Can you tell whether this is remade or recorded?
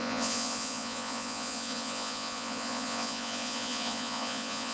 remade